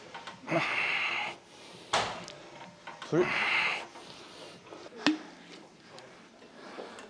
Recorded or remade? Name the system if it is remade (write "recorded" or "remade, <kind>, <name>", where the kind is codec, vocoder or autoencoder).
recorded